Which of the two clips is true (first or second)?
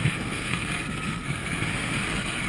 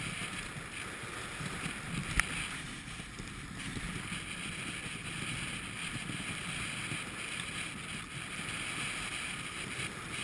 second